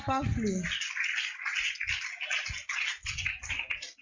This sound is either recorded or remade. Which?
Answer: recorded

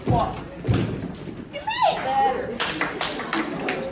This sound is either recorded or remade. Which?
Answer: recorded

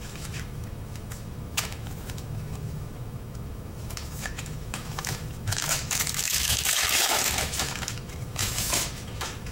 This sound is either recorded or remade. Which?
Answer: remade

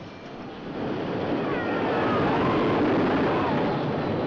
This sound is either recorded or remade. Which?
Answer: recorded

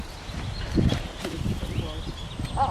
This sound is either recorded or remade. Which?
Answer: recorded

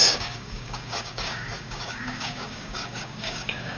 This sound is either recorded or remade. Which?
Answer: remade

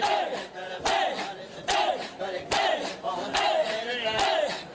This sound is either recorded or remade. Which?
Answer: recorded